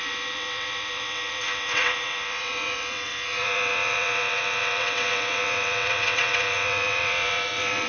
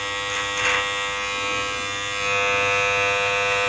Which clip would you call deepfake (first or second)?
first